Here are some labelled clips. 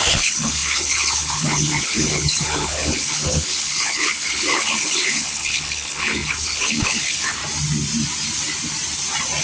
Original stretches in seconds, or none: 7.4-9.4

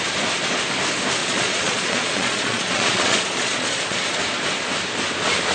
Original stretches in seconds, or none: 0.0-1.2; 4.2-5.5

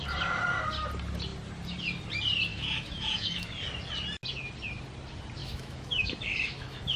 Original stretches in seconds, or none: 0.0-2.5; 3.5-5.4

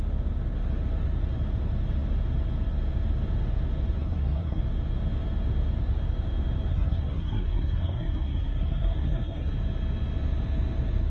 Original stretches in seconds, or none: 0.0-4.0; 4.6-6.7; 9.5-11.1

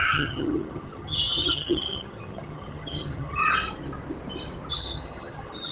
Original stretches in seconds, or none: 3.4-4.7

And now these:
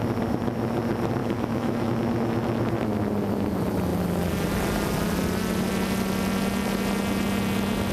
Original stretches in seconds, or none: 0.0-1.2; 1.9-7.9

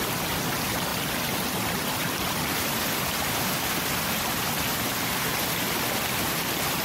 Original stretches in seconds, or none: 0.0-0.9; 4.5-6.8